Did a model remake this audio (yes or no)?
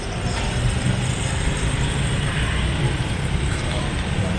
no